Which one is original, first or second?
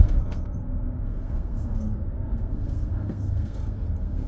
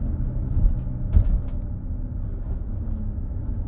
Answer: second